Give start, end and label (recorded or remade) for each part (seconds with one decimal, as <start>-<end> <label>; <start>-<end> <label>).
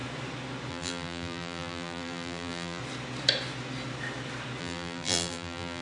0.0-0.7 recorded; 0.7-2.8 remade; 2.8-4.6 recorded; 4.6-5.8 remade